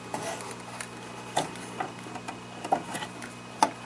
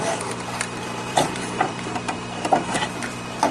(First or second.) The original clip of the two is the first